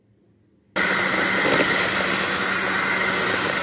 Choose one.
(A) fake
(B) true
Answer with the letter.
B